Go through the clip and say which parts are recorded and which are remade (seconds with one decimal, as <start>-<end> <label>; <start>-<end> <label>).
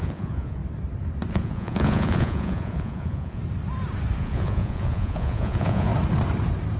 0.0-0.6 remade; 0.6-1.3 recorded; 1.3-3.4 remade; 3.4-4.2 recorded; 4.2-5.9 remade; 5.9-6.8 recorded